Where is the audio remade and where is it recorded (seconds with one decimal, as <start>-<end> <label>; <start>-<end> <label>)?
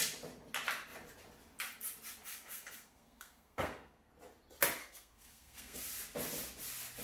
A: 0.0-2.3 recorded; 2.3-4.1 remade; 4.1-4.8 recorded; 4.8-5.8 remade; 5.8-7.0 recorded